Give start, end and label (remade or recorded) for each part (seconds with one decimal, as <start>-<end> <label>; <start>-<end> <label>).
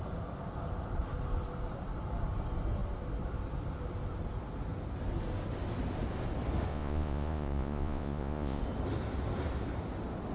0.0-6.7 recorded; 6.7-8.6 remade; 8.6-10.3 recorded